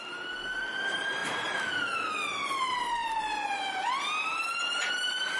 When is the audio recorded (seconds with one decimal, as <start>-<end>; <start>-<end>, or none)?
0.0-5.4